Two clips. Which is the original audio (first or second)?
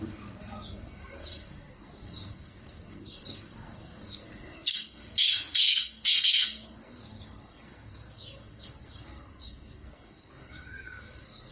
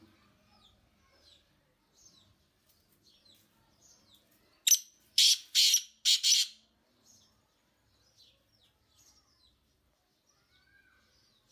second